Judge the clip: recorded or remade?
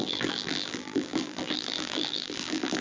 remade